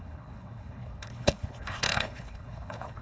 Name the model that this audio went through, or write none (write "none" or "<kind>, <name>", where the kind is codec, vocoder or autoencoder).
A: codec, HILCodec